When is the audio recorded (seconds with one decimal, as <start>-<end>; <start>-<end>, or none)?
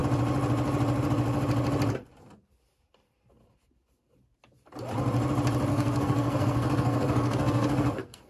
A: 0.0-5.7